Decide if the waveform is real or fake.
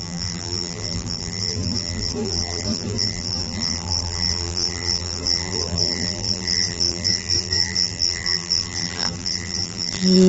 fake